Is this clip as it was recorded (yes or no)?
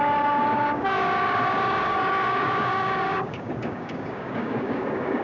no